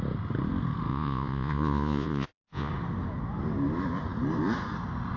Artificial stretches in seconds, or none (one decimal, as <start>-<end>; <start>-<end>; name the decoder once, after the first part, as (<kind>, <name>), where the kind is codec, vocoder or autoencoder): 0.9-2.7 (vocoder, Vocos)